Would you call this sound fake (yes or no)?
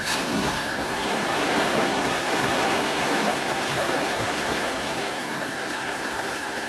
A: yes